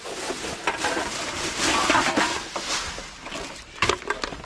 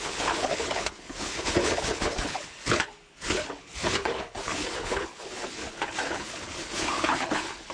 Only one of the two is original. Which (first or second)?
first